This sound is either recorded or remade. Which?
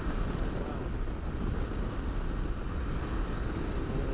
recorded